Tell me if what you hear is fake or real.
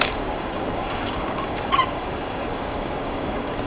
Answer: fake